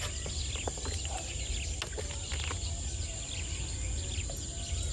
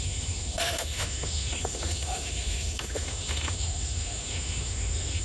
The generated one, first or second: second